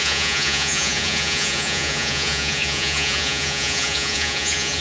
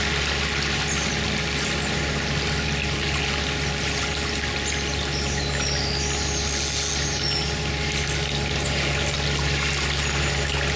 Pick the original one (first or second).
second